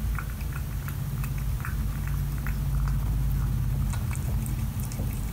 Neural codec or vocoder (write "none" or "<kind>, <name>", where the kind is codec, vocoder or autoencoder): none